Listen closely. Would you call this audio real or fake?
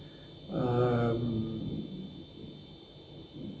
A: real